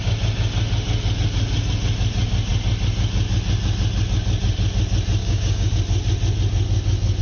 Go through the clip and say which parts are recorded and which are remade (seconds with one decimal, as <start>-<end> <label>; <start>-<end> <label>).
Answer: 0.0-5.2 recorded; 5.2-5.7 remade; 5.7-7.2 recorded